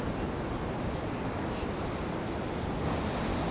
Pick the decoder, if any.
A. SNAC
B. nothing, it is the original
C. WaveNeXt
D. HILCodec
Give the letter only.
B